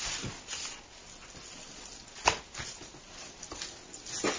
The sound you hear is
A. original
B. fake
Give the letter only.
A